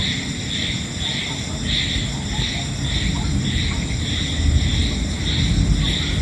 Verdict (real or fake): real